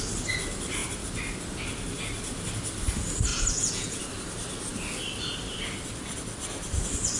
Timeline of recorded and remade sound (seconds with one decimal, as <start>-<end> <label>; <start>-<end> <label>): 0.0-3.3 recorded; 3.3-4.0 remade; 4.0-7.2 recorded